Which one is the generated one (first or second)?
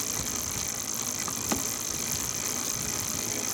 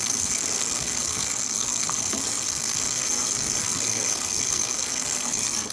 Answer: second